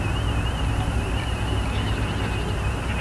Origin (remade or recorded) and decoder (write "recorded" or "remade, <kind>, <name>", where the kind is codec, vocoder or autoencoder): recorded